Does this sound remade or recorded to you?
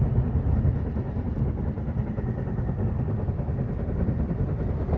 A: recorded